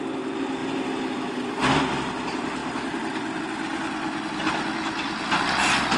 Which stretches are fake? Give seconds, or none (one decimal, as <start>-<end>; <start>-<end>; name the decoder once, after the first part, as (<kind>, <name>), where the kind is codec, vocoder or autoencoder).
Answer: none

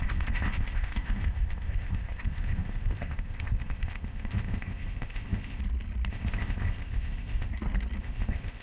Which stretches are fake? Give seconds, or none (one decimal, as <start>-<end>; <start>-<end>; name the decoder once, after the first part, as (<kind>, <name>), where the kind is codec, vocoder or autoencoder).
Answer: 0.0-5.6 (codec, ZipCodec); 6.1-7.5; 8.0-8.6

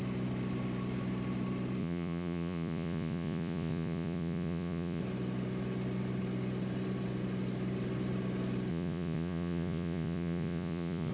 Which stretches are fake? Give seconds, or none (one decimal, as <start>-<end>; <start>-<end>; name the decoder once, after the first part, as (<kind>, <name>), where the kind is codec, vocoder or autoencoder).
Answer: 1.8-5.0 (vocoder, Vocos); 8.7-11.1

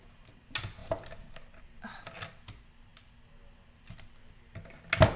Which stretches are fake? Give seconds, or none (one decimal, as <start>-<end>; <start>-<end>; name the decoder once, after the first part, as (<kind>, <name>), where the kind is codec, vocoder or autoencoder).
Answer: none

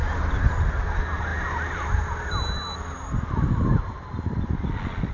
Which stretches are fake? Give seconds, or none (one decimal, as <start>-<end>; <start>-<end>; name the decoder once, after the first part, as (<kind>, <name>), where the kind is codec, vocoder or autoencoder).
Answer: none

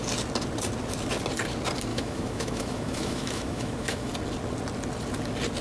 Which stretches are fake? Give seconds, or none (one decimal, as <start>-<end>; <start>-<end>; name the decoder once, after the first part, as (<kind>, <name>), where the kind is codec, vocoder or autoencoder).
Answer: 1.9-4.1 (autoencoder, DAC-VAE)

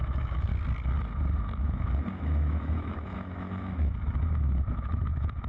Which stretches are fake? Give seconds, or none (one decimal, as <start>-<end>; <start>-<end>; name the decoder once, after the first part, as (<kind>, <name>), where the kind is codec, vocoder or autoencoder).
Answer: 0.0-0.5 (autoencoder, DAC-VAE); 1.6-5.5

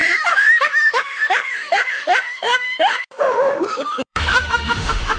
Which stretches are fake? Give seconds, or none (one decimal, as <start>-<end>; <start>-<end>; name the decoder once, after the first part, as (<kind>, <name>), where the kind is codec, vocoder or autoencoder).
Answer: 0.0-5.2 (autoencoder, DAC-VAE)